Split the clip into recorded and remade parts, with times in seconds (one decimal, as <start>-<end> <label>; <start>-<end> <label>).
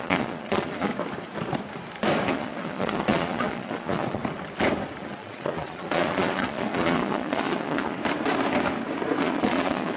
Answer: 0.0-0.9 remade; 0.9-2.3 recorded; 2.3-4.2 remade; 4.2-5.0 recorded; 5.0-8.0 remade; 8.0-9.2 recorded; 9.2-10.0 remade